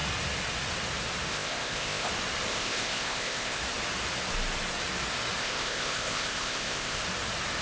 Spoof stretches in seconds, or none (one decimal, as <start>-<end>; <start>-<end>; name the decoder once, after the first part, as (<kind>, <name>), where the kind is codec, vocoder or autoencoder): 1.3-2.1 (codec, ZipCodec); 2.5-3.6; 5.4-7.0